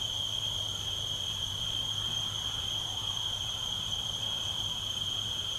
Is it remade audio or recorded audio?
remade